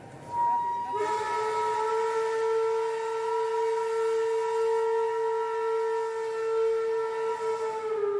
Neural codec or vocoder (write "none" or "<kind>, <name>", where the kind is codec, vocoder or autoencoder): none